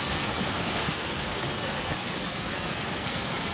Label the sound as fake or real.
fake